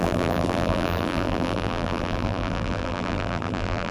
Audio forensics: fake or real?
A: fake